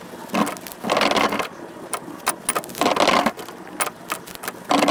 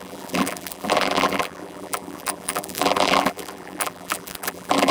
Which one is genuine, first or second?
first